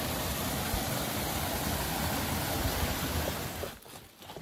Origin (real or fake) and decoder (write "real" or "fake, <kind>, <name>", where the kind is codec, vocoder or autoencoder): real